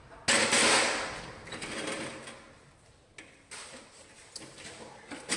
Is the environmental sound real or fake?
real